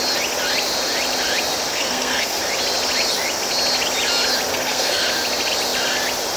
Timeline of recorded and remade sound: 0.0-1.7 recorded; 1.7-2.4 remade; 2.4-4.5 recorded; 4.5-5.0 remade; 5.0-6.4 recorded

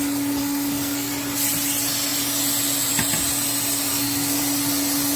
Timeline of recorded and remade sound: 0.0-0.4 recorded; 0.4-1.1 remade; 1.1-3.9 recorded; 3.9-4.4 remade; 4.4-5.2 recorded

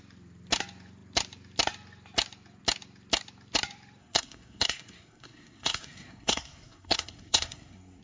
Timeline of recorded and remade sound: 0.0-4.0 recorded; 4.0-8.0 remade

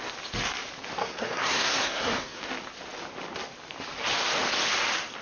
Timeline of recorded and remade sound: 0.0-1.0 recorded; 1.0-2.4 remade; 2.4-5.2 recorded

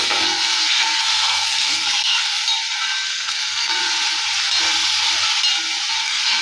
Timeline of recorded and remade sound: 0.0-2.3 remade; 2.3-3.1 recorded; 3.1-3.8 remade; 3.8-6.0 recorded; 6.0-6.4 remade

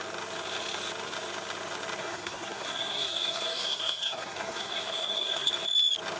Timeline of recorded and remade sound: 0.0-2.0 recorded; 2.0-5.5 remade; 5.5-6.2 recorded